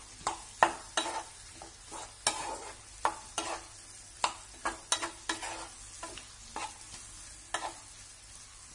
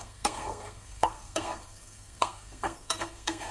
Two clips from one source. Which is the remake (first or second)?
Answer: second